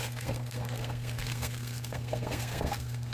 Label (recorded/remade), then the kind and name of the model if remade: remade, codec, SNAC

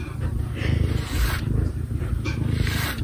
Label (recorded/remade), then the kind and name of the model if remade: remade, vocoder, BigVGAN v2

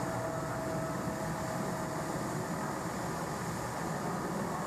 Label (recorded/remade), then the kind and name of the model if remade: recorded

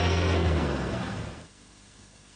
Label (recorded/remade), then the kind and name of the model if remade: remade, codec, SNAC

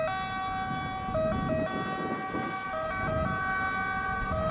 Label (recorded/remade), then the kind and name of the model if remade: recorded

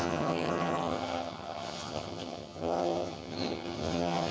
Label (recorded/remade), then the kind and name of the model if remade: remade, vocoder, HiFi-GAN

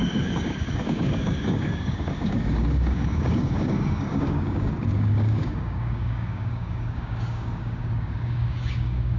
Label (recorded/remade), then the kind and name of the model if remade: remade, codec, DAC